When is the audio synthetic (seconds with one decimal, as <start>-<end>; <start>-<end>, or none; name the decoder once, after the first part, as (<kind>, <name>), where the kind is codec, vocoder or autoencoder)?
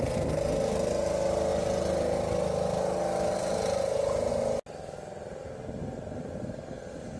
none